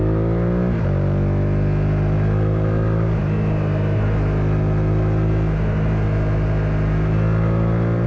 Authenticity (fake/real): real